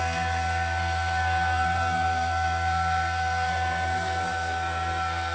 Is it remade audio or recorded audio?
remade